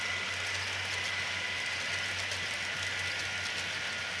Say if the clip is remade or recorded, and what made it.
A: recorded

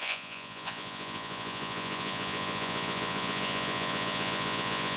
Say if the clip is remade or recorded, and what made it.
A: remade, vocoder, Vocos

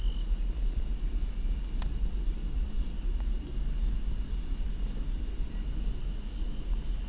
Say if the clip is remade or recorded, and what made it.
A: recorded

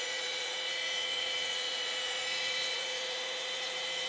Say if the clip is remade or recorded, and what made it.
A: remade, vocoder, Vocos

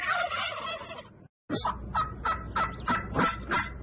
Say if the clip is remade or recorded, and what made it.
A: recorded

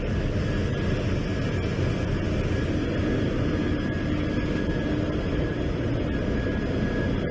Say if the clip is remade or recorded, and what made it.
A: recorded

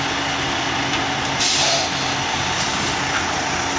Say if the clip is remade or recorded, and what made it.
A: recorded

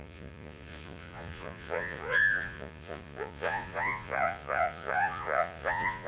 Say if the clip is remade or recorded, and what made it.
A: remade, vocoder, Vocos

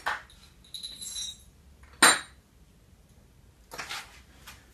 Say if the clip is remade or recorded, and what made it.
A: recorded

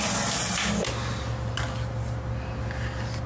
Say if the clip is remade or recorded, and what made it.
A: recorded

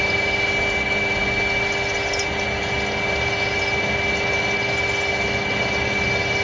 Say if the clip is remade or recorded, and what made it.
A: recorded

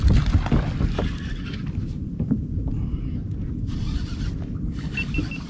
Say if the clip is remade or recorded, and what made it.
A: recorded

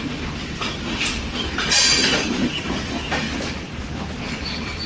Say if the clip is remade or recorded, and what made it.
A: recorded